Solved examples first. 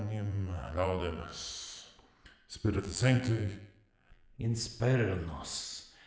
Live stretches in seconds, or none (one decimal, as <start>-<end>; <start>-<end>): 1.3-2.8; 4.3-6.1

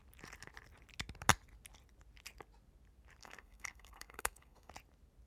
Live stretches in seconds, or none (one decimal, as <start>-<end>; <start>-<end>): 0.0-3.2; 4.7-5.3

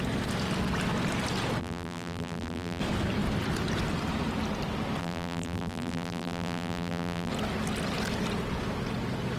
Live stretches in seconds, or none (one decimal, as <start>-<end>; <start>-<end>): 0.0-1.6; 2.8-5.0; 7.3-9.4

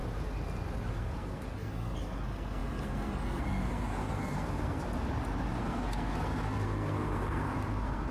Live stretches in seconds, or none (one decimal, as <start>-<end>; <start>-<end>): 0.0-0.9; 4.8-5.6

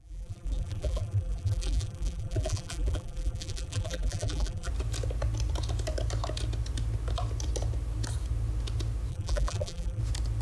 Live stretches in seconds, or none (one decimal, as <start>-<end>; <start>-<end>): 4.7-9.1; 10.0-10.4

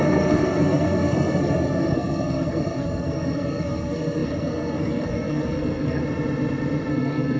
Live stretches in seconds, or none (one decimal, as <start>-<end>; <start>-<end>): 6.0-6.9

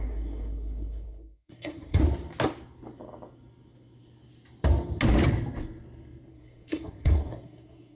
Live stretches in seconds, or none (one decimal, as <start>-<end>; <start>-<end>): 2.0-6.3